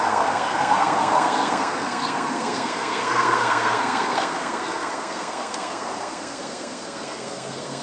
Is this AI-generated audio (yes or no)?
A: yes